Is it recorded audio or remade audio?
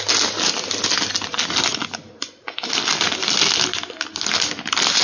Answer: recorded